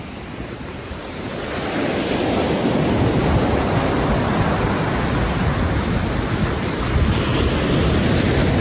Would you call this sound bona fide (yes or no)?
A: yes